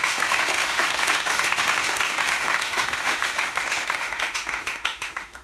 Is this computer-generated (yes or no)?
yes